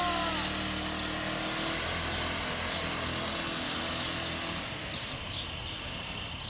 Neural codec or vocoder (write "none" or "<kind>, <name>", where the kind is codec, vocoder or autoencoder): none